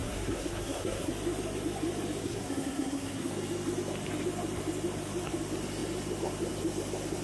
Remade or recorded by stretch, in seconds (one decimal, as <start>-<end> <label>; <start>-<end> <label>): 0.0-1.1 remade; 1.1-2.2 recorded; 2.2-3.3 remade; 3.3-7.2 recorded